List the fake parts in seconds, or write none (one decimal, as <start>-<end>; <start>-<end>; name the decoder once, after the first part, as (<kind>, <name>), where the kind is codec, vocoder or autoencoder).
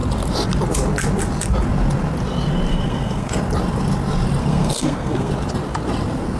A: 2.7-3.3 (codec, SNAC); 4.4-5.3